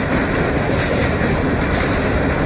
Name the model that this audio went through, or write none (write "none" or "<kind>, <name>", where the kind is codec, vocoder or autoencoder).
none